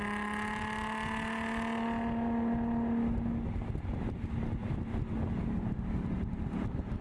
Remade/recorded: recorded